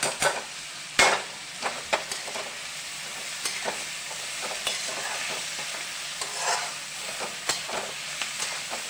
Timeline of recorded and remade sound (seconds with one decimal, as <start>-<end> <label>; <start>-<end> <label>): 0.0-8.9 recorded